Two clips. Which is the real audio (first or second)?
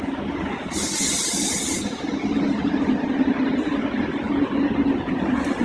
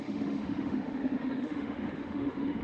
first